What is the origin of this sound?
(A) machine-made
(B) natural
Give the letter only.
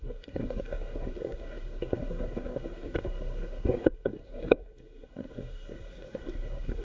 A